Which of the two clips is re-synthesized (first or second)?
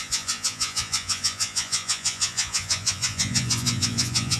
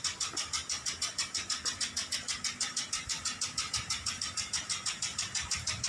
first